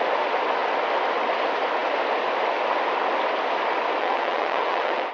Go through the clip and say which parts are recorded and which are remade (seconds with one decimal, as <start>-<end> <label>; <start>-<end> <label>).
0.0-4.0 recorded; 4.0-5.1 remade